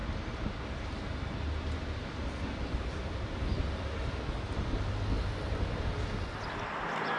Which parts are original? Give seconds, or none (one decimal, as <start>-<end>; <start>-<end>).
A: 0.0-7.2